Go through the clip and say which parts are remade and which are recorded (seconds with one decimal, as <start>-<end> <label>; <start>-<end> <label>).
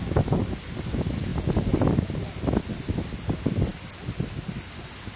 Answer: 0.0-5.2 recorded